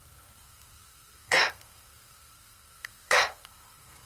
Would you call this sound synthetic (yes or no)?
yes